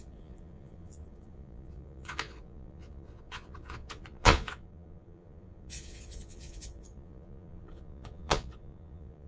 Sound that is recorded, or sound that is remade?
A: remade